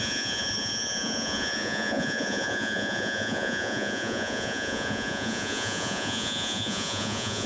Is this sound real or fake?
fake